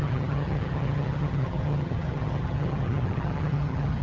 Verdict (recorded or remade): remade